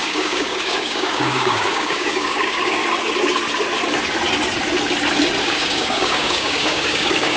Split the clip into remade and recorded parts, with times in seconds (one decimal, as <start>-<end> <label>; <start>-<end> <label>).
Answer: 0.0-2.8 remade; 2.8-5.4 recorded; 5.4-7.4 remade